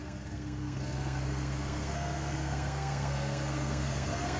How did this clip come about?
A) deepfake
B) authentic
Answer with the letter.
A